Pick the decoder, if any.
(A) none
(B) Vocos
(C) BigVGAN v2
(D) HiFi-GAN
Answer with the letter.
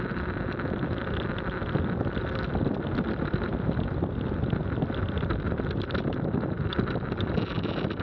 A